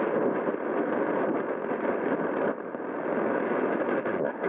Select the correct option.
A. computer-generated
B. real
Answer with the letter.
B